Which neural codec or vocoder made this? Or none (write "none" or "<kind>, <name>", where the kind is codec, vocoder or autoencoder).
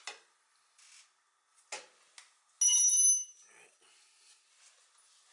none